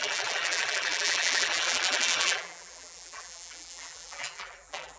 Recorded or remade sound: remade